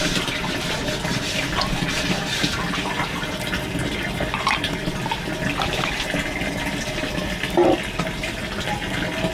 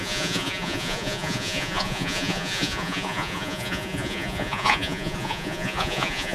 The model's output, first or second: second